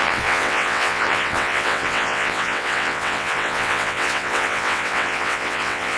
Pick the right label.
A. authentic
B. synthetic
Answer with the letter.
B